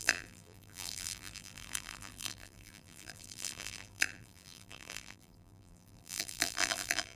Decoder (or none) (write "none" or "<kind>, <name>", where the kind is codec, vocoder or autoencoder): vocoder, BigVGAN v2